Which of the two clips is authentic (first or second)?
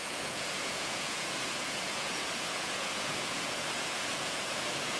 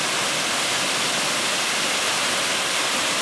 second